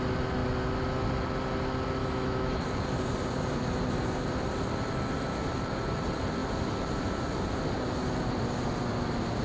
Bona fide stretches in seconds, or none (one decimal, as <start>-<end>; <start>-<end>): 0.0-2.0; 2.6-9.4